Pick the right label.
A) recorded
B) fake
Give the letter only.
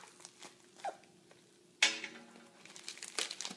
A